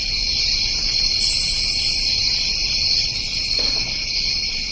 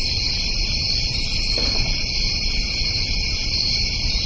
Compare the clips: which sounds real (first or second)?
first